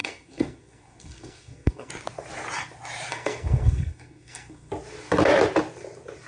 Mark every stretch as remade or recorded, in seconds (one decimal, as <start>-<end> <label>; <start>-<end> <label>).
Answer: 0.0-1.9 remade; 1.9-3.1 recorded; 3.1-4.7 remade; 4.7-6.3 recorded